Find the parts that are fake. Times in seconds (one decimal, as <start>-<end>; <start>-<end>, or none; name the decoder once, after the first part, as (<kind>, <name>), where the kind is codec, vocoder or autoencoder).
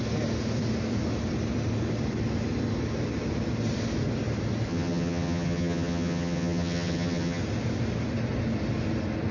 4.7-7.4 (vocoder, HiFi-GAN)